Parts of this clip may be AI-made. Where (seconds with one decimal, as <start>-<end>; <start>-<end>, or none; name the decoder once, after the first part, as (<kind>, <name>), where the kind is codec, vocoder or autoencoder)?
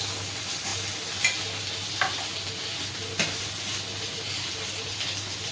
none